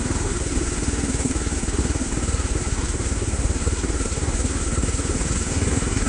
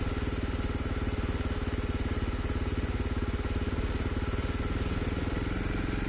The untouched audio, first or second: second